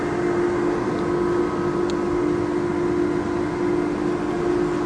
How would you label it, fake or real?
real